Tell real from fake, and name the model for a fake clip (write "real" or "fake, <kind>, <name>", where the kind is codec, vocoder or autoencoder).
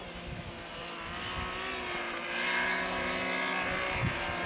real